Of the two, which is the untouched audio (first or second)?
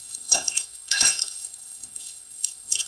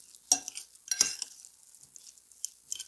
second